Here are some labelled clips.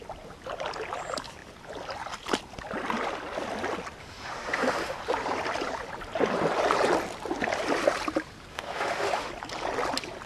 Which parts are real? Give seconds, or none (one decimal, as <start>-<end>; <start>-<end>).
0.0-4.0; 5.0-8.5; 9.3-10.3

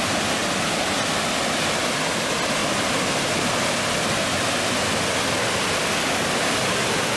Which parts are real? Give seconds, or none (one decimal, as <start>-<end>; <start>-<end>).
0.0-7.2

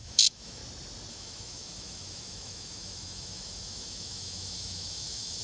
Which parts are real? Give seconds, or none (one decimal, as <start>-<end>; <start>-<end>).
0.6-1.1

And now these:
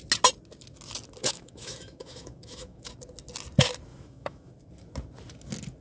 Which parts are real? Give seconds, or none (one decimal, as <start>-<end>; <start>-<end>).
0.0-1.2; 2.9-3.9; 4.5-5.8

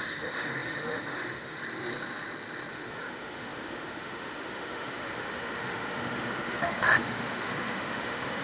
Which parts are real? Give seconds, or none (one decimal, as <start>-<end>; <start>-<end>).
1.6-2.7

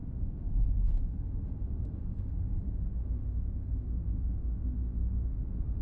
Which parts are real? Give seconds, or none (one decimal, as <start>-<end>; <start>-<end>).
2.3-2.9